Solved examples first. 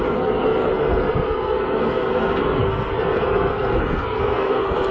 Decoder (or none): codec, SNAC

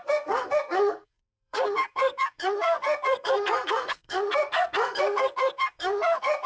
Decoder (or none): codec, SNAC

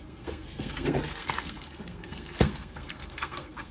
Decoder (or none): codec, SNAC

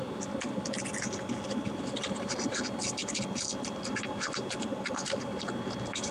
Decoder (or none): none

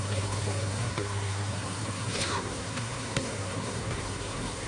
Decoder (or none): codec, SNAC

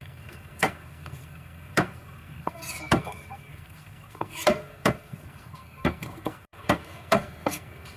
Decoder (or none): codec, SNAC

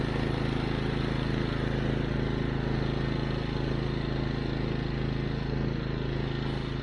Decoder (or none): none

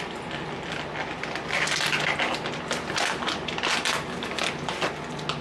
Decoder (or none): none